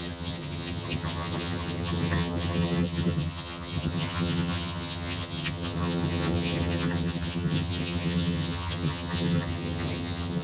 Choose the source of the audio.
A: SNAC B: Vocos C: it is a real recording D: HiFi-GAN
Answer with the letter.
D